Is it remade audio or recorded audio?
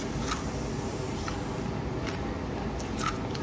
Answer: recorded